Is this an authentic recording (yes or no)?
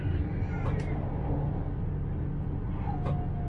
yes